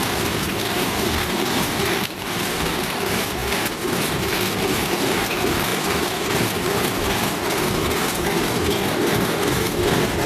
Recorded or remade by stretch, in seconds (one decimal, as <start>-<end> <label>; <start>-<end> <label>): 0.0-10.3 remade